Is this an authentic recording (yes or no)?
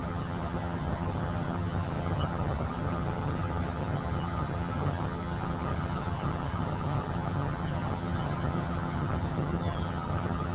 no